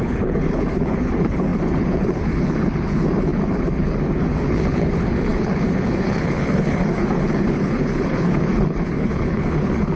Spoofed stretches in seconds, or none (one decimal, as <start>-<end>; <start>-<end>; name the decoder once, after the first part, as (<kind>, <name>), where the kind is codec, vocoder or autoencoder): 0.0-10.0 (codec, HILCodec)